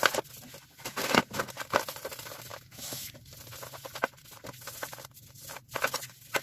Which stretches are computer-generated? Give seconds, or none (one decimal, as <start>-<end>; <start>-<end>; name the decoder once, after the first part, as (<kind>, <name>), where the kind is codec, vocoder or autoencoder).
2.5-3.1 (autoencoder, DAC-VAE)